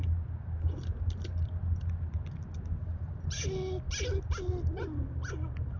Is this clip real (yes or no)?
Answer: yes